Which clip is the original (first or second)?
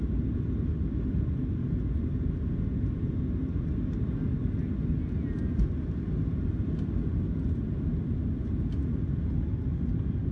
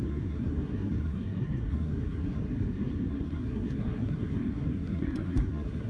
first